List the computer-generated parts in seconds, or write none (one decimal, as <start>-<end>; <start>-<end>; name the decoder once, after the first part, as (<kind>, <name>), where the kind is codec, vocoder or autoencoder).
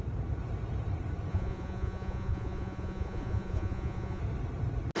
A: 1.3-4.2 (vocoder, Vocos)